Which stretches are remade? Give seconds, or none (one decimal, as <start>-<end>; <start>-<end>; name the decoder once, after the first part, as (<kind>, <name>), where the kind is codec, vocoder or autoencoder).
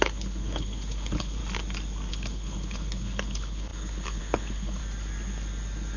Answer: 0.0-1.4 (codec, HILCodec); 2.1-4.8